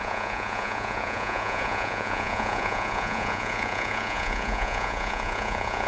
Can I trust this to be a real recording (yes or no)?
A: no